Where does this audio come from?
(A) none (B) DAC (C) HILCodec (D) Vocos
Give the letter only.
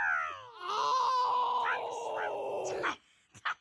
A